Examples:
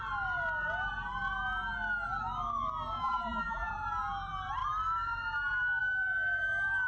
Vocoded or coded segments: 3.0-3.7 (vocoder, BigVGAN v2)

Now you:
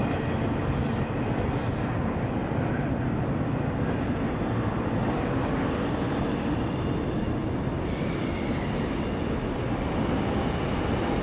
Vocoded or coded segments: none

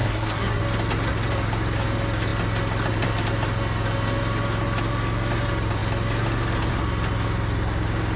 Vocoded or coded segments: 0.0-0.6 (codec, SNAC)

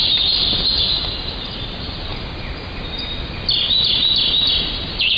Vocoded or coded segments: none

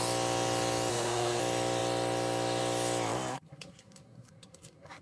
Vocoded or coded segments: 0.9-1.4 (codec, SNAC); 3.3-5.0

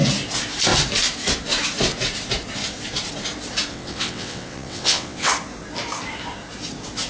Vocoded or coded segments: 3.7-5.3 (vocoder, WaveNeXt)